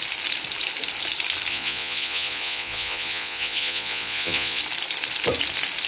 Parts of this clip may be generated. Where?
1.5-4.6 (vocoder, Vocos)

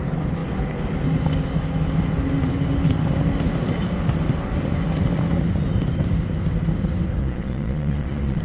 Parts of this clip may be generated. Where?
7.2-8.4 (vocoder, Vocos)